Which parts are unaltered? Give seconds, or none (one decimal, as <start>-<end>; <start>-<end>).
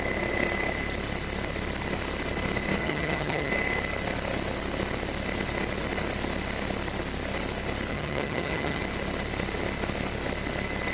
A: 0.0-2.8; 3.5-7.9; 8.8-10.9